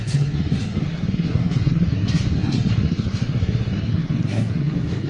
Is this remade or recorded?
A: remade